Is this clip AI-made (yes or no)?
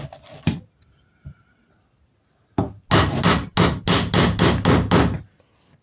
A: no